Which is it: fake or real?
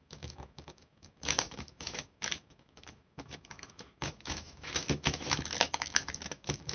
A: fake